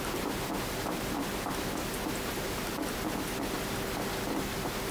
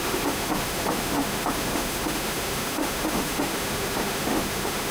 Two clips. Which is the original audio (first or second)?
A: first